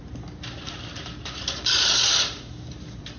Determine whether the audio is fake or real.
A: fake